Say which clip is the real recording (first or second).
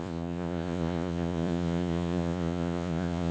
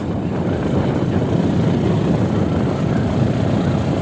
second